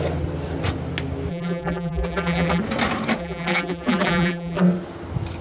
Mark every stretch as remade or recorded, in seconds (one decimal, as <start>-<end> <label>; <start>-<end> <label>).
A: 0.0-1.3 recorded; 1.3-2.6 remade; 2.6-3.2 recorded; 3.2-4.6 remade; 4.6-5.4 recorded